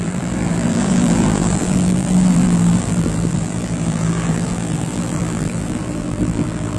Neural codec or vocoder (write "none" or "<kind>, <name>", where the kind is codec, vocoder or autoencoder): vocoder, BigVGAN v2